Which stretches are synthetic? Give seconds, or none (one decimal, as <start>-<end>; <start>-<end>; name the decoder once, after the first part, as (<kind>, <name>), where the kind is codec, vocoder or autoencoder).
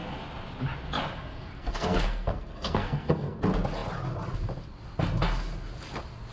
1.5-3.4 (codec, SNAC)